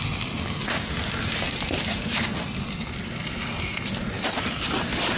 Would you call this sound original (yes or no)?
yes